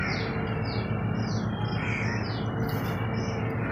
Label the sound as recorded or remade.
recorded